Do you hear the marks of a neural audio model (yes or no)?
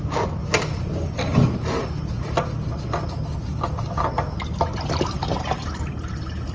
no